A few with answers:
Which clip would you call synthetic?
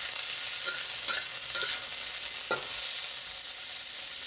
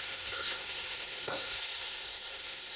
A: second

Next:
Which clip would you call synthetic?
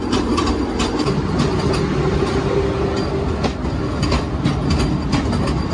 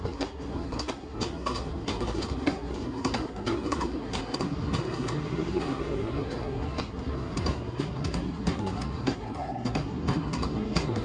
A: second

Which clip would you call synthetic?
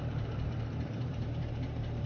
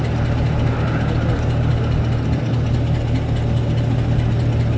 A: first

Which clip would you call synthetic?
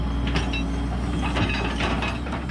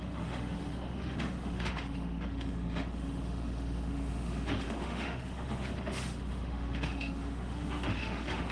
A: second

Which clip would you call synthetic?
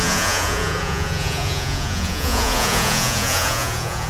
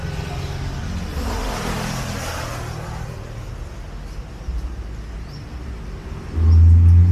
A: first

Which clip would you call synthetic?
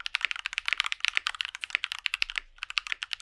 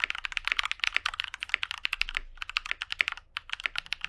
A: first